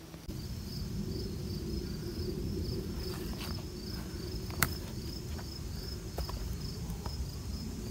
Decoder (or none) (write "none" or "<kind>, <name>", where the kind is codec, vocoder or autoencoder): none